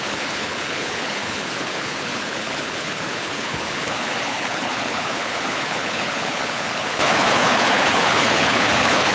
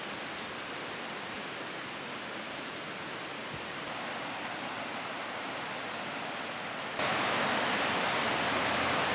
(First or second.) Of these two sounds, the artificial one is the first